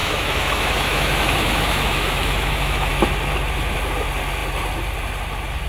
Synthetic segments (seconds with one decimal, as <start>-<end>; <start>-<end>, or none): 0.0-2.9